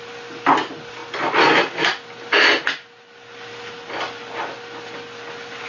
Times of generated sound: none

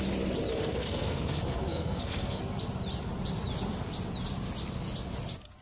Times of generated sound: 0.5-2.4 (codec, SNAC)

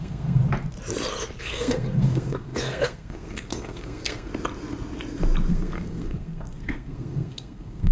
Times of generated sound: 0.0-0.4 (codec, SNAC); 1.4-4.3; 5.5-7.9